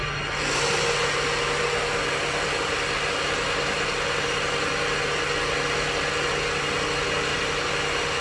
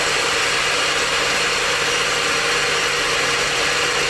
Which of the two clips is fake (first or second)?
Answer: second